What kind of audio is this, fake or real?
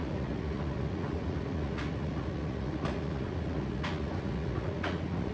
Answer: fake